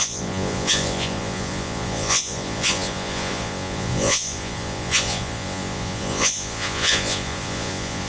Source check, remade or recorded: remade